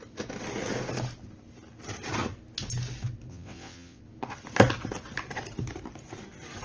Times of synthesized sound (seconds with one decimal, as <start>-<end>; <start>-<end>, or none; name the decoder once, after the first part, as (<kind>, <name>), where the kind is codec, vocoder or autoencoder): 3.3-4.0 (vocoder, WaveNeXt)